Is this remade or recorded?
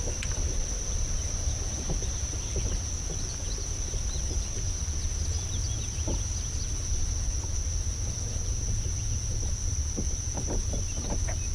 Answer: recorded